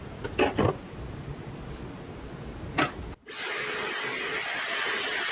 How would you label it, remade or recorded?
recorded